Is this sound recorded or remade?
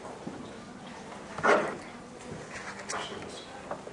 recorded